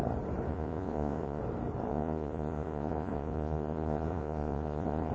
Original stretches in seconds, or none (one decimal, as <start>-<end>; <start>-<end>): 0.0-0.5; 1.4-1.9

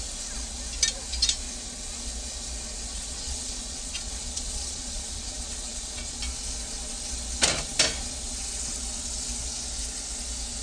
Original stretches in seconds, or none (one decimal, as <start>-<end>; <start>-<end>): 0.0-2.9; 6.2-10.6

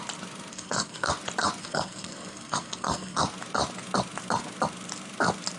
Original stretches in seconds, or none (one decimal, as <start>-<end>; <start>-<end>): 0.0-0.5; 1.1-1.6; 3.2-5.6

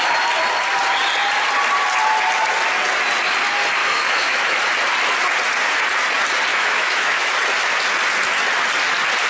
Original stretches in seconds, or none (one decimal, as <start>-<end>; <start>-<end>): 0.0-3.8; 4.6-6.5; 7.4-9.3

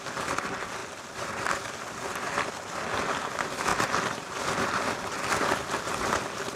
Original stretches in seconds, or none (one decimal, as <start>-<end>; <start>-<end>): 0.0-6.6